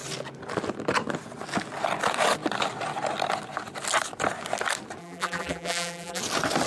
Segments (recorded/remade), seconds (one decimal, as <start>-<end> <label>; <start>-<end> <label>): 0.0-5.0 recorded; 5.0-6.2 remade; 6.2-6.7 recorded